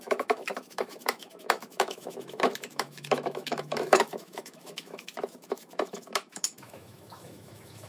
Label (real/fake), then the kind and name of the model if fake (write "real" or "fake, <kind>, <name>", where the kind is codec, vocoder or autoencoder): fake, autoencoder, DAC-VAE